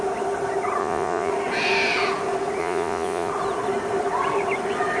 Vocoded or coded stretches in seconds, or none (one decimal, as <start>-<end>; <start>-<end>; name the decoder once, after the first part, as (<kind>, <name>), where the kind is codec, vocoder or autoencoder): 0.8-1.3 (vocoder, Vocos); 2.6-3.3